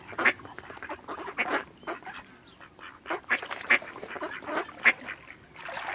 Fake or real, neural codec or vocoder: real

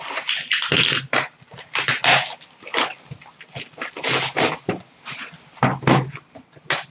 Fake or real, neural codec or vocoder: real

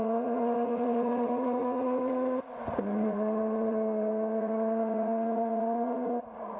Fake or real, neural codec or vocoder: fake, vocoder, Vocos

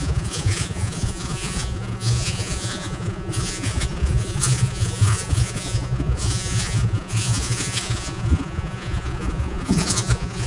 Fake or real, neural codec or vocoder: fake, vocoder, Vocos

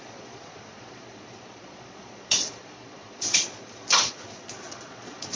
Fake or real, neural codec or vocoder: fake, vocoder, Vocos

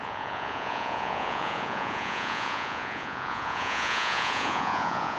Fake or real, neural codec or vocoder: fake, vocoder, Vocos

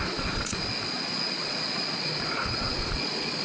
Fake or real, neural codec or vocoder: fake, vocoder, Vocos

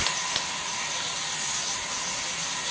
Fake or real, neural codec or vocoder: real